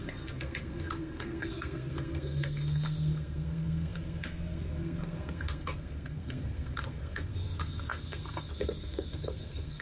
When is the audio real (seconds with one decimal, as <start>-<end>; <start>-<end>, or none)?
none